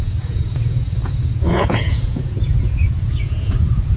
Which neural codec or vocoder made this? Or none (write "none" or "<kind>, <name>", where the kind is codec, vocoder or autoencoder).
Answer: vocoder, Vocos